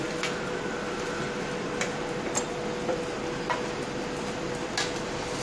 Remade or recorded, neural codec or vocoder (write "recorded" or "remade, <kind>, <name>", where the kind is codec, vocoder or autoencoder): recorded